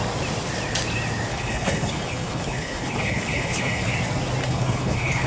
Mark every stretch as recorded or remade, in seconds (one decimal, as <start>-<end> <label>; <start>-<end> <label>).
0.0-1.3 recorded; 1.3-3.9 remade; 3.9-4.4 recorded; 4.4-5.3 remade